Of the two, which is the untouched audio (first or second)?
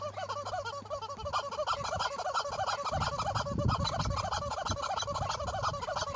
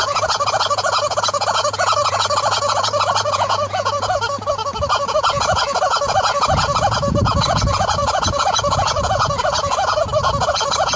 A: first